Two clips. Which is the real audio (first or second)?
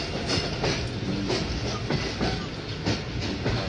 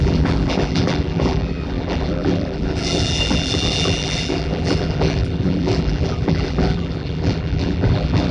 first